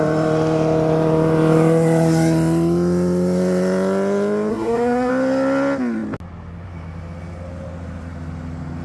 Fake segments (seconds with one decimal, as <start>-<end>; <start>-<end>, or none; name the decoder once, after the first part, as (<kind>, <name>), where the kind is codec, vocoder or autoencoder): 4.5-5.1 (codec, SNAC)